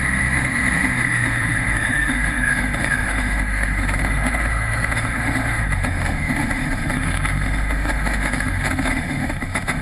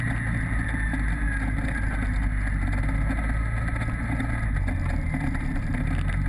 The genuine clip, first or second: second